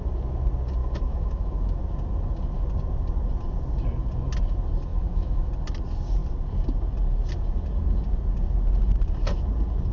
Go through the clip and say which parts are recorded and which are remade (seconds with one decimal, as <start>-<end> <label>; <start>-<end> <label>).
0.0-0.8 recorded; 0.8-1.8 remade; 1.8-4.9 recorded; 4.9-5.5 remade; 5.5-9.9 recorded